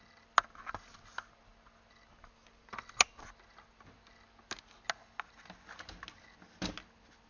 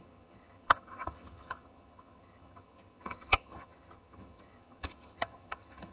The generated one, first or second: second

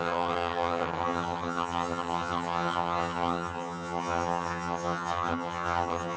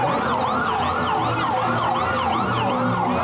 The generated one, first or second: first